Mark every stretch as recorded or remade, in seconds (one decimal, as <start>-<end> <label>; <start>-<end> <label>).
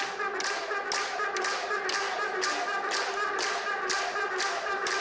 0.0-5.0 recorded